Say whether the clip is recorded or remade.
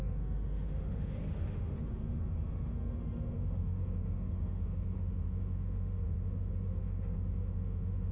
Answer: remade